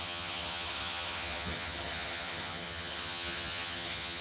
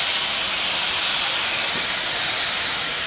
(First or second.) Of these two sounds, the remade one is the first